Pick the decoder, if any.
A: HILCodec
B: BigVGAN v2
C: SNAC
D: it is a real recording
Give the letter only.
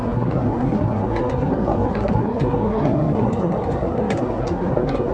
C